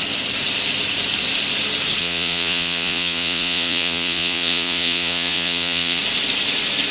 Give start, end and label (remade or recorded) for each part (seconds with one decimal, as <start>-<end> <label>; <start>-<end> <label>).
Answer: 0.0-2.0 recorded; 2.0-6.0 remade; 6.0-6.9 recorded